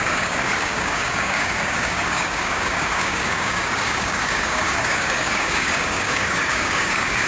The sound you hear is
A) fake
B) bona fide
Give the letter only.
A